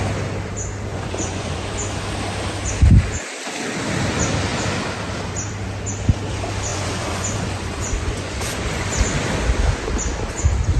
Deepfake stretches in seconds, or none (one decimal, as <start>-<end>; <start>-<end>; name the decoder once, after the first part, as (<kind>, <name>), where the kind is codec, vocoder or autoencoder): 0.9-1.6 (vocoder, Vocos); 6.7-8.9